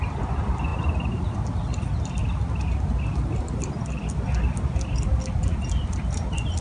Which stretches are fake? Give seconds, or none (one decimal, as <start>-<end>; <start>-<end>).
none